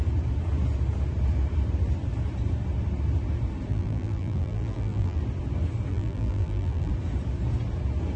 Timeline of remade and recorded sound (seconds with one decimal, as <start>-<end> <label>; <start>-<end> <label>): 0.0-3.7 recorded; 3.7-5.2 remade; 5.2-5.9 recorded; 5.9-6.9 remade; 6.9-8.2 recorded